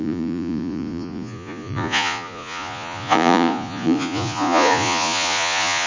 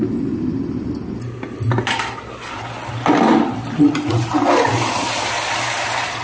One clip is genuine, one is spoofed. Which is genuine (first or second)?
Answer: second